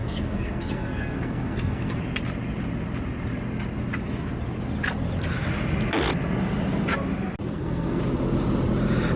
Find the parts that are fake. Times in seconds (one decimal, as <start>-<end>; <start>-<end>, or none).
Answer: 0.0-2.0; 7.4-8.0

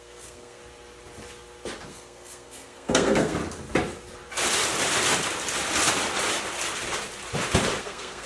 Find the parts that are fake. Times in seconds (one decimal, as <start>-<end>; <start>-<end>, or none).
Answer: 0.0-0.6; 1.9-3.4; 7.8-8.3

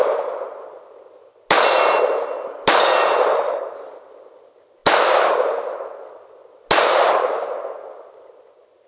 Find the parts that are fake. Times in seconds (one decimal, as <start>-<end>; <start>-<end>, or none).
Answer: none

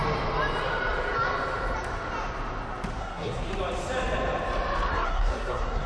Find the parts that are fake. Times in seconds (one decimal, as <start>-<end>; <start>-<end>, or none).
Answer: 3.0-3.5; 4.9-5.9

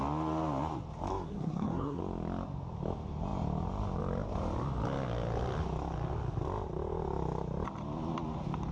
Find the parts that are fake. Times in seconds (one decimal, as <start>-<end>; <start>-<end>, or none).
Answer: 1.1-2.0

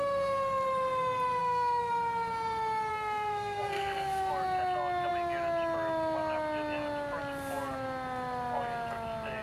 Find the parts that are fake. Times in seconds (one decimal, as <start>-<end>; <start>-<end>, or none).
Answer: 1.4-1.9; 2.9-4.3

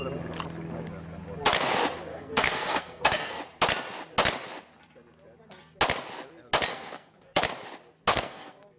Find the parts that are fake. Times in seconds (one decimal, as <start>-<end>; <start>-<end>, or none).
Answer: 2.1-3.4; 6.7-7.4; 8.1-8.8